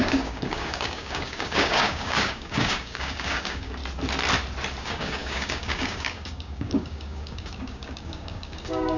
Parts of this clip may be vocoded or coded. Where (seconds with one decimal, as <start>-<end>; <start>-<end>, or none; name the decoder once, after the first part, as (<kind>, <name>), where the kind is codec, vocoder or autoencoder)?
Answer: 0.0-3.8 (codec, DAC); 4.8-9.0